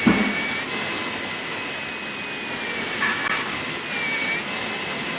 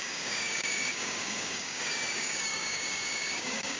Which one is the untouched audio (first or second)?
first